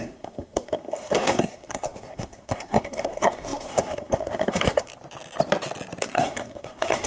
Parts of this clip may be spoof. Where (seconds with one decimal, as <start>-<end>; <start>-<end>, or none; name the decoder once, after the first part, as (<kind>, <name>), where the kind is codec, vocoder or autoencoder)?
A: 0.0-4.9 (codec, SNAC); 6.0-7.1